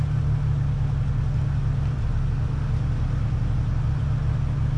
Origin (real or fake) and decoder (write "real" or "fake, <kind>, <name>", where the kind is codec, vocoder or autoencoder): real